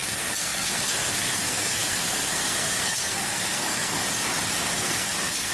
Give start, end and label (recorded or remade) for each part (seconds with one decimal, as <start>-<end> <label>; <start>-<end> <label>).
0.0-4.0 remade; 4.0-4.8 recorded; 4.8-5.5 remade